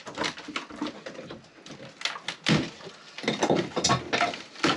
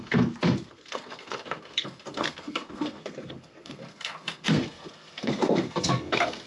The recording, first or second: first